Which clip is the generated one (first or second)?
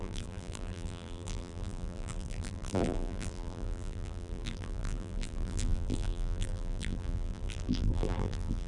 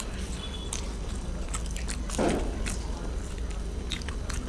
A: first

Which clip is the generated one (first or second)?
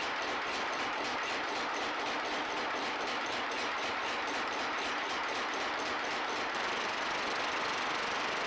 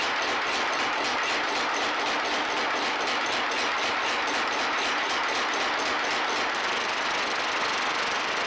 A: first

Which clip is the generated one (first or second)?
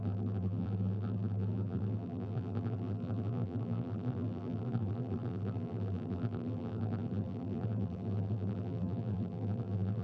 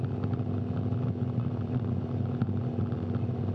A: first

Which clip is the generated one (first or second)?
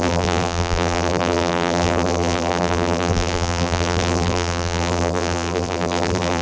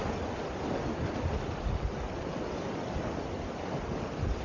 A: first